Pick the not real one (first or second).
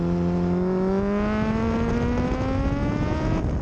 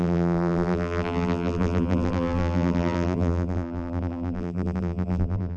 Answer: second